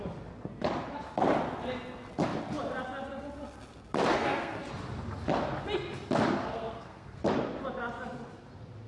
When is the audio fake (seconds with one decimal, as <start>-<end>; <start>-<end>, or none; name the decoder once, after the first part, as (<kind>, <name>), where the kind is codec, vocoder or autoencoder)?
4.1-4.6 (codec, SNAC); 6.4-7.2